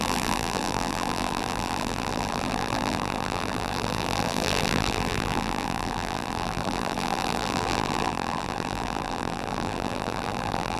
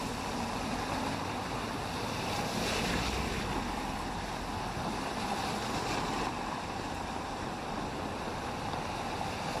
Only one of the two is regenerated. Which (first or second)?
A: first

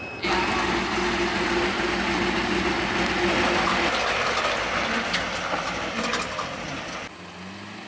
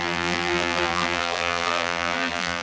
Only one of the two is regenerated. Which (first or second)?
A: second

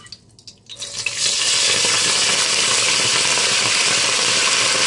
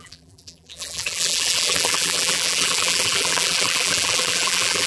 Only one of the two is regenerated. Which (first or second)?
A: second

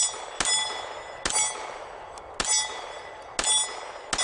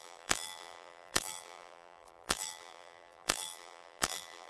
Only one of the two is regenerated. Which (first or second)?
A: second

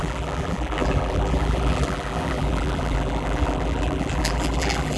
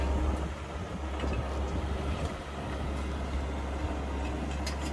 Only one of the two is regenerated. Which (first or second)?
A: first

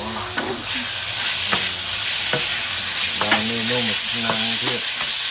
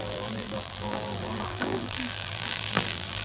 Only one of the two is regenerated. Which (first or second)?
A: second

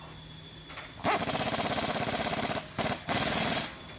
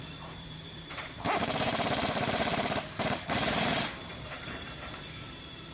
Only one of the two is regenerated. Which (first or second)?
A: second